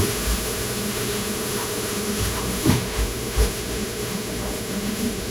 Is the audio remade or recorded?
remade